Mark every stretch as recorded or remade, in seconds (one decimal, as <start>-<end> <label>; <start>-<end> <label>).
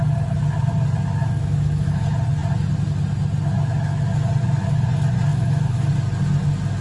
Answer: 0.0-1.2 recorded; 1.2-2.0 remade; 2.0-5.3 recorded; 5.3-5.9 remade; 5.9-6.8 recorded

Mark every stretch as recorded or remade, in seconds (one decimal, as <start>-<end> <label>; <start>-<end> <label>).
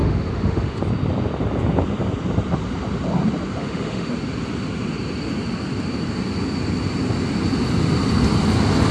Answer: 0.0-0.8 remade; 0.8-3.6 recorded; 3.6-4.1 remade; 4.1-8.9 recorded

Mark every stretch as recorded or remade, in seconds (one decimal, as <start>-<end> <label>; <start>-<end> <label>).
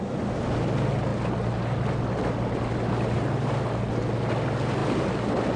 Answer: 0.0-5.6 recorded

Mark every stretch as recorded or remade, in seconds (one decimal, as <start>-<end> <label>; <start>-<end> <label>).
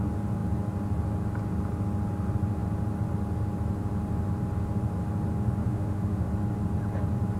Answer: 0.0-5.6 recorded; 5.6-6.3 remade; 6.3-7.4 recorded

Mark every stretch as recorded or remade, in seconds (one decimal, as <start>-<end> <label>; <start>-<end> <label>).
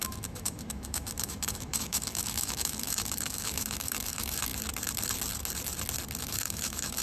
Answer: 0.0-4.5 remade; 4.5-6.2 recorded; 6.2-7.0 remade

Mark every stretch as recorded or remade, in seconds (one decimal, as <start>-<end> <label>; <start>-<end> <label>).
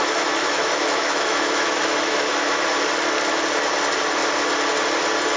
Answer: 0.0-2.7 remade; 2.7-5.4 recorded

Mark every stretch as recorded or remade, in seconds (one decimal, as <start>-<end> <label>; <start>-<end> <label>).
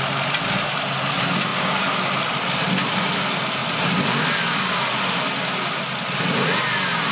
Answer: 0.0-7.1 recorded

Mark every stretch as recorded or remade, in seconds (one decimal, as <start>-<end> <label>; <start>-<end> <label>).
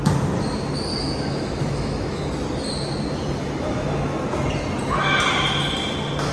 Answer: 0.0-0.9 recorded; 0.9-2.3 remade; 2.3-3.4 recorded; 3.4-4.2 remade; 4.2-6.3 recorded